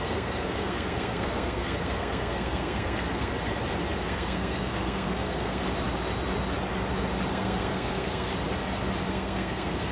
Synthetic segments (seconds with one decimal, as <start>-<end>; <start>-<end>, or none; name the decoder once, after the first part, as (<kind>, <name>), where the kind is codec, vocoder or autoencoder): 0.0-3.3 (codec, SNAC); 4.0-5.6; 7.3-8.3; 9.1-9.9